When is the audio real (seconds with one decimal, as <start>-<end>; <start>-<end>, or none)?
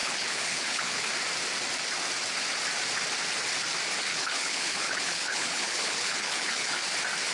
1.1-4.1; 6.8-7.3